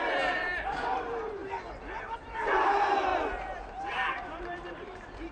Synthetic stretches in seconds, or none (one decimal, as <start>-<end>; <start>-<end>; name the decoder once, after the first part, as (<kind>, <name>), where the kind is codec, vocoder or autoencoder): 0.0-1.4 (vocoder, BigVGAN v2); 2.0-3.1; 3.9-5.3